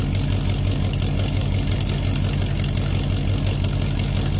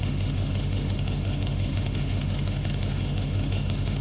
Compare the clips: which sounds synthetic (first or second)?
second